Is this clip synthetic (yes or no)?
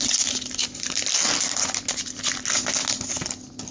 no